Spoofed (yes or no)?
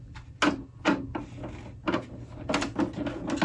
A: no